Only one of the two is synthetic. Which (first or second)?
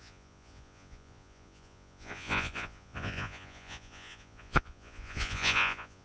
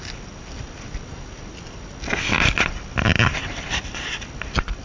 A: first